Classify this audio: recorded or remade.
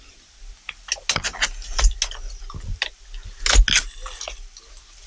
recorded